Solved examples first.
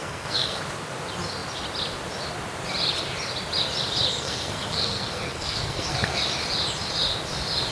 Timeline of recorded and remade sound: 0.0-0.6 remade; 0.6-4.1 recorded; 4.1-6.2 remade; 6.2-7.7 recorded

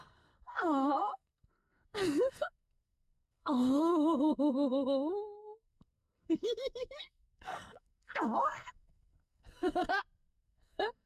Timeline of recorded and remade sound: 0.0-11.1 remade

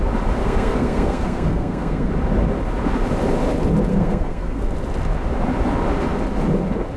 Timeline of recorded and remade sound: 0.0-0.4 recorded; 0.4-2.1 remade; 2.1-3.9 recorded; 3.9-4.7 remade; 4.7-7.0 recorded

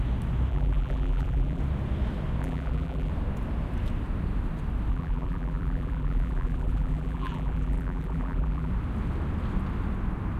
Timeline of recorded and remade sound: 0.0-0.5 recorded; 0.5-1.6 remade; 1.6-2.4 recorded; 2.4-3.1 remade; 3.1-4.9 recorded; 4.9-8.7 remade; 8.7-10.4 recorded

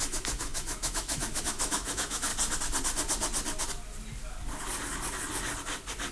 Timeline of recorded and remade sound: 0.0-2.3 remade; 2.3-6.1 recorded

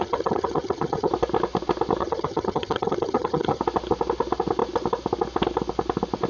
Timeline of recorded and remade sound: 0.0-1.1 remade; 1.1-2.0 recorded; 2.0-3.6 remade; 3.6-6.3 recorded